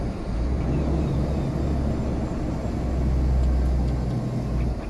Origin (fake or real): real